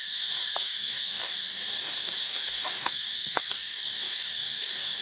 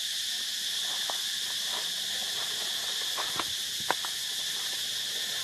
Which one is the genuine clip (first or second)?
second